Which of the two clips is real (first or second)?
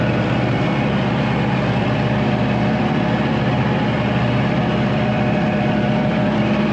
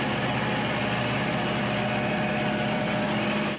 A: second